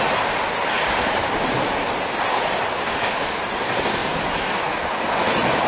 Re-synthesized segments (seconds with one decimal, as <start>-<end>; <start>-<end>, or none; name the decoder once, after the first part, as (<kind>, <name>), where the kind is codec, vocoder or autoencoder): none